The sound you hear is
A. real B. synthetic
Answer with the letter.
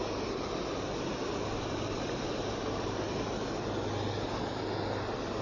A